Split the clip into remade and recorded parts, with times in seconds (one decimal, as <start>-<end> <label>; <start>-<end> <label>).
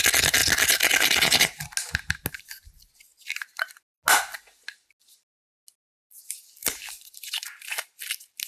0.0-6.6 recorded; 6.6-8.0 remade; 8.0-8.5 recorded